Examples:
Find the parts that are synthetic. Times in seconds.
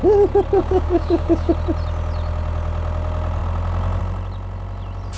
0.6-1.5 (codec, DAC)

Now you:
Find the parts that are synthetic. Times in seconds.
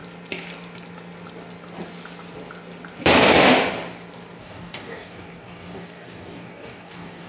4.4-7.3 (codec, DAC)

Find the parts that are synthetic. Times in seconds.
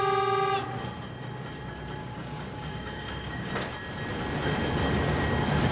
2.0-3.5 (codec, DAC)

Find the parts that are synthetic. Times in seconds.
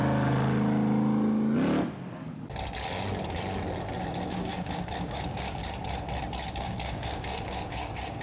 4.3-5.6 (codec, DAC); 6.5-8.2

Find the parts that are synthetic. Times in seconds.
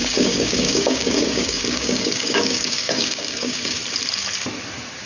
0.0-3.8 (codec, DAC)